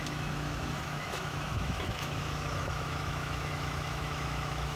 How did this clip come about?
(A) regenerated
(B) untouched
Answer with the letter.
A